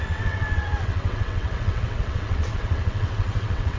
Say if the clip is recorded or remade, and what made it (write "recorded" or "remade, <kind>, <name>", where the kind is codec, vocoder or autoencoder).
remade, vocoder, WaveNeXt